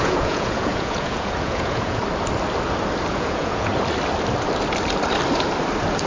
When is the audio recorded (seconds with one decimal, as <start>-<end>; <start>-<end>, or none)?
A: 2.0-3.1; 3.7-6.1